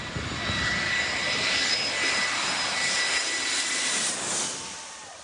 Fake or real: fake